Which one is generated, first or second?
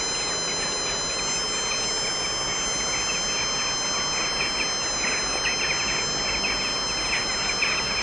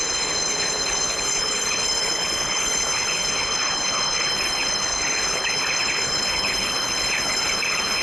second